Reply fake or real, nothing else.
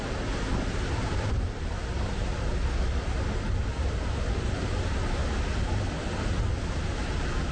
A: real